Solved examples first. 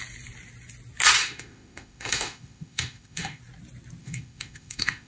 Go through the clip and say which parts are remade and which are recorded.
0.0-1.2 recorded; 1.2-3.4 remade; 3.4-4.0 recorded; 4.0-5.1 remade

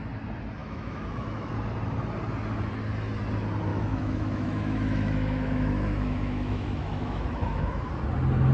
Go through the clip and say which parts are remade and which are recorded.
0.0-0.6 recorded; 0.6-1.5 remade; 1.5-3.7 recorded; 3.7-7.8 remade; 7.8-8.5 recorded

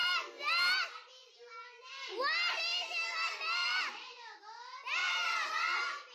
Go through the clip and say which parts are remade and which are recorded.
0.0-0.5 remade; 0.5-1.2 recorded; 1.2-1.8 remade; 1.8-3.6 recorded; 3.6-4.4 remade; 4.4-5.0 recorded; 5.0-5.5 remade; 5.5-6.1 recorded

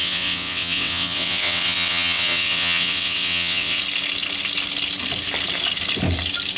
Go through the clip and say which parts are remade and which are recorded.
0.0-3.8 remade; 3.8-6.6 recorded

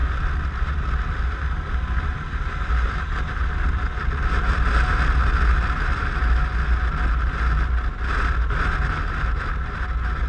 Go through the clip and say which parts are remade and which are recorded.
0.0-10.3 recorded

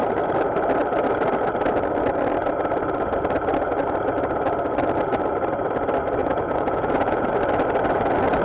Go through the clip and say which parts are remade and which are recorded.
0.0-6.2 recorded; 6.2-7.3 remade; 7.3-8.4 recorded